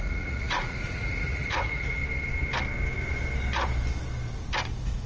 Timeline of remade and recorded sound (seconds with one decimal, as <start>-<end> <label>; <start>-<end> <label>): 0.0-2.0 remade; 2.0-5.1 recorded